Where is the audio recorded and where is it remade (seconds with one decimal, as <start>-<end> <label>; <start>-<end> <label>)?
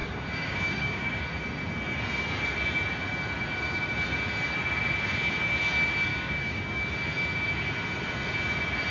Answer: 0.0-1.2 remade; 1.2-6.1 recorded; 6.1-6.8 remade; 6.8-8.9 recorded